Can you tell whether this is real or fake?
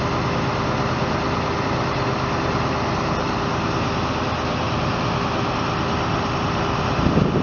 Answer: real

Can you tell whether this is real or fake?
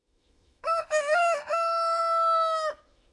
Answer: fake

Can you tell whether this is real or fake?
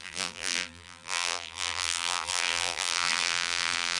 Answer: fake